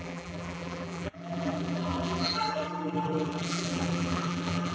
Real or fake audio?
fake